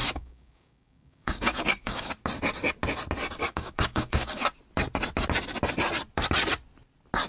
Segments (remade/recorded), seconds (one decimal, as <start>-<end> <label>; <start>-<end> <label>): 0.0-2.1 remade; 2.1-3.4 recorded; 3.4-4.5 remade; 4.5-7.3 recorded